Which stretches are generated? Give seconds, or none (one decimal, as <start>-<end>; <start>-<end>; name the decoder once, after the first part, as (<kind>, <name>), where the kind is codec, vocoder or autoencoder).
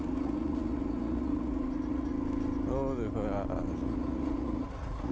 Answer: 0.0-2.1 (vocoder, Vocos); 3.7-5.1